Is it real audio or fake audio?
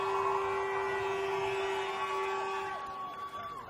real